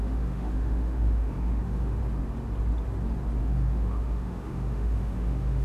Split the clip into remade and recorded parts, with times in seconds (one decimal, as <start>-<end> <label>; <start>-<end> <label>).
0.0-2.0 remade; 2.0-3.4 recorded; 3.4-5.6 remade